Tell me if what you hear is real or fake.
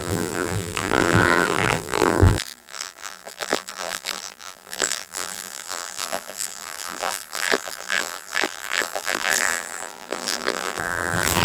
fake